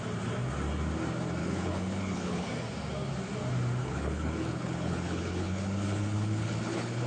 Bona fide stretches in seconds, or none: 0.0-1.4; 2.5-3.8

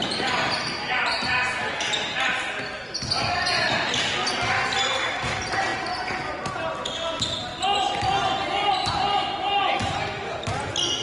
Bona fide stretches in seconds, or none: 0.0-11.0

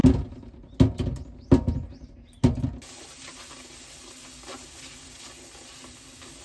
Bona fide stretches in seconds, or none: 0.0-6.4

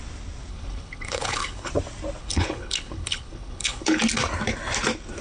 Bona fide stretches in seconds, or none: 0.0-0.5; 1.7-2.2; 4.0-5.2

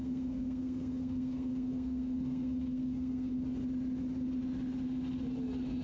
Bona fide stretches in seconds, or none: 3.3-5.8

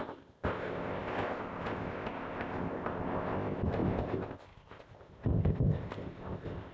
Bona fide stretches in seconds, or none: none

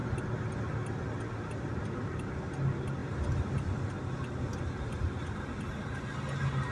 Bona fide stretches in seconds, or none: 0.0-3.0; 3.8-6.7